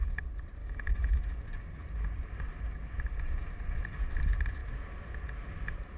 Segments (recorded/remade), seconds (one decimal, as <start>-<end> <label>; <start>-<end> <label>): 0.0-0.6 recorded; 0.6-1.4 remade; 1.4-6.0 recorded